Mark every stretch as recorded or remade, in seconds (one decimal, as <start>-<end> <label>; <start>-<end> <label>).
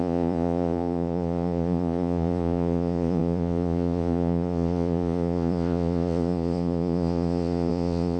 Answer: 0.0-8.2 remade